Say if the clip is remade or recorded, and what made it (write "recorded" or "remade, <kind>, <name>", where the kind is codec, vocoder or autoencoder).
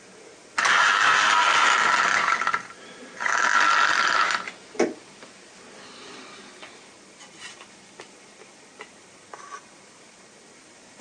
recorded